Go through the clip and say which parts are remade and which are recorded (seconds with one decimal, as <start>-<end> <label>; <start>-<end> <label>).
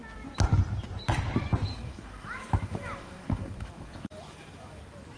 0.0-1.7 recorded; 1.7-4.8 remade; 4.8-5.2 recorded